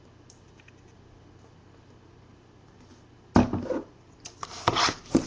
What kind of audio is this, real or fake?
real